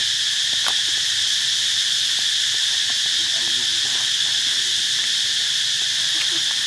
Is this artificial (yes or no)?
no